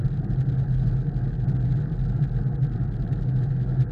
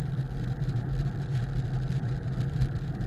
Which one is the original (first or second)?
first